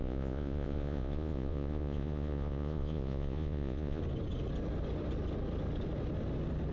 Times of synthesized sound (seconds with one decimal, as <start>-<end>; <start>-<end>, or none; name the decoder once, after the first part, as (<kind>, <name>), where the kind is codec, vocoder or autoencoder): 0.0-4.0 (vocoder, Vocos)

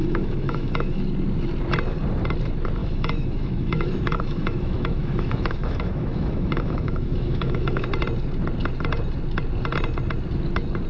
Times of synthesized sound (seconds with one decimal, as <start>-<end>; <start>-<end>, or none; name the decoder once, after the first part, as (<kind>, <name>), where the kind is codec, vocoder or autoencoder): 0.0-1.0 (autoencoder, DAC-VAE); 2.8-7.9

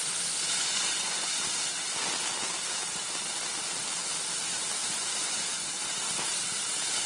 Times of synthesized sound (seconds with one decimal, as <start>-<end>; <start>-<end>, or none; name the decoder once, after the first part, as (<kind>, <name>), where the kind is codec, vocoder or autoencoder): 0.6-1.4 (vocoder, Vocos); 4.8-5.7